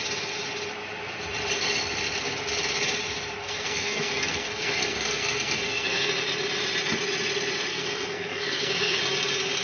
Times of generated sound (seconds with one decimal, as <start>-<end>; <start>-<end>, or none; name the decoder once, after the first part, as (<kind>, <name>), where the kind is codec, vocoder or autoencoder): 3.4-6.1 (codec, SNAC); 7.7-9.0